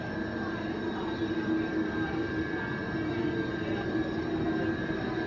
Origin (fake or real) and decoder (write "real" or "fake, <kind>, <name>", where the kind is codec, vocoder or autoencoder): real